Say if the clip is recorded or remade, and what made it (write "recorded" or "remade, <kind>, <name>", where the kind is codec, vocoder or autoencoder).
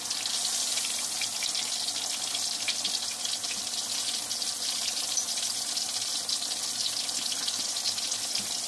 recorded